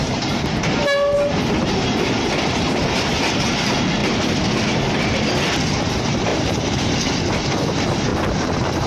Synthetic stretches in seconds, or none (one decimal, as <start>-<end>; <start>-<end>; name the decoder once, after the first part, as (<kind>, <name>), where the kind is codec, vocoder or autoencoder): 6.3-7.0 (vocoder, BigVGAN v2); 8.1-8.9